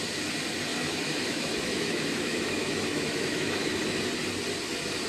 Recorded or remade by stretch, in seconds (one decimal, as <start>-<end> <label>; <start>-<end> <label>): 0.0-0.7 recorded; 0.7-3.8 remade; 3.8-5.1 recorded